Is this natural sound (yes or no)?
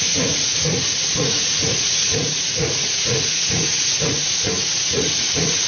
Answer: no